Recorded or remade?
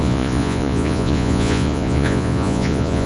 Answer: remade